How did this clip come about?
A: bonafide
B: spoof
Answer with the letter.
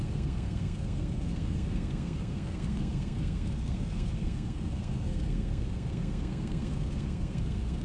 B